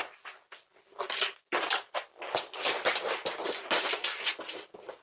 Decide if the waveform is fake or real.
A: real